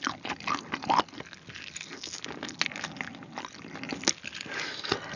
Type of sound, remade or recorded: recorded